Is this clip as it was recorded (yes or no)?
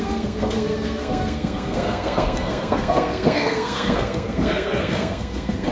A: no